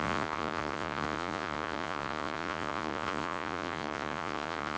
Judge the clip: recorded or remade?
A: remade